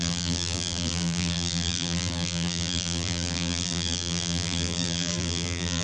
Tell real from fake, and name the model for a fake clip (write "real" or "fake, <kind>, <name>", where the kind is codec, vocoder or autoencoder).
fake, vocoder, BigVGAN v2